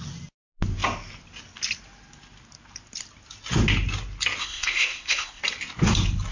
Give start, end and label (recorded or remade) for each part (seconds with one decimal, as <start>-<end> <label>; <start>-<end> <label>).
0.0-4.4 recorded; 4.4-5.4 remade; 5.4-6.3 recorded